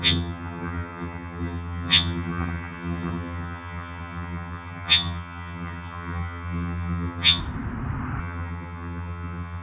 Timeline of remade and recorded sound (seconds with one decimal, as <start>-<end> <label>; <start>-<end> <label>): 0.0-7.4 remade; 7.4-8.2 recorded; 8.2-9.6 remade